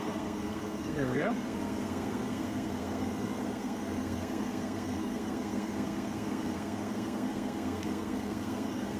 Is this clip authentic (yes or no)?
no